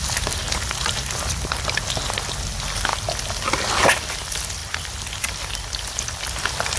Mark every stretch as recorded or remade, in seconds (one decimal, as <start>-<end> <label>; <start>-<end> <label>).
0.0-6.8 recorded